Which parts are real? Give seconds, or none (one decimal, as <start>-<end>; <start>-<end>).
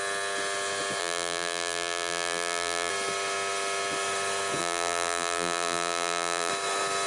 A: 0.0-1.0; 2.9-4.6; 6.5-7.1